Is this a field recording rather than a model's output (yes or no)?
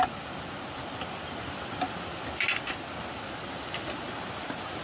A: yes